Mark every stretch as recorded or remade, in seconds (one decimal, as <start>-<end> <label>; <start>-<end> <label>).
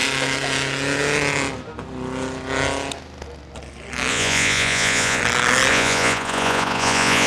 0.0-4.1 recorded; 4.1-5.2 remade; 5.2-5.7 recorded; 5.7-7.3 remade